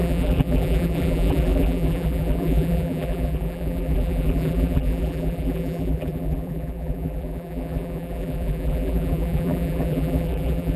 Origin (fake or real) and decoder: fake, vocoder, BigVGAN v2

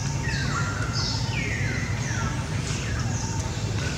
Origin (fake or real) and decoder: real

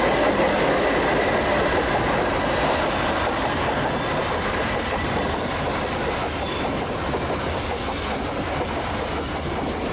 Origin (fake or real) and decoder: real